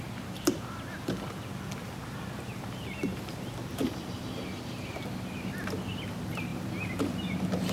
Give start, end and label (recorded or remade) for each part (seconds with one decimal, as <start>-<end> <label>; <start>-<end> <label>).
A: 0.0-1.8 recorded; 1.8-4.4 remade; 4.4-6.5 recorded; 6.5-7.2 remade; 7.2-7.7 recorded